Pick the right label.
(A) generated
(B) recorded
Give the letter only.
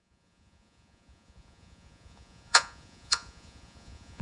A